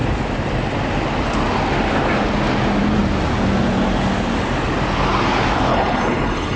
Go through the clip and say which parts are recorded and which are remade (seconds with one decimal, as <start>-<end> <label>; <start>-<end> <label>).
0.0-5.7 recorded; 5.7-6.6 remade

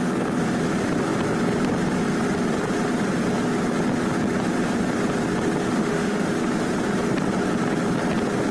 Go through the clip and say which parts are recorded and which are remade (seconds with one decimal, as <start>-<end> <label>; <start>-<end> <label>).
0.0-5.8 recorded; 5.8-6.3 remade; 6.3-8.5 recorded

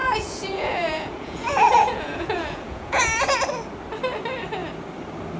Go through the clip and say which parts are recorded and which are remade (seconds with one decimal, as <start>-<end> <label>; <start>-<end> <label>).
0.0-3.2 remade; 3.2-5.4 recorded